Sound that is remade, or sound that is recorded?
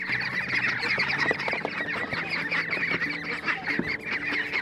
recorded